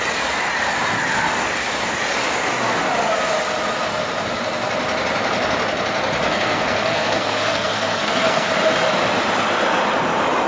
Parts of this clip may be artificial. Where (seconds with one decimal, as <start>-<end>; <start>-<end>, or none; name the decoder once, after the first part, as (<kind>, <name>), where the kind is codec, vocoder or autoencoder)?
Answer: 6.2-8.5 (codec, SNAC)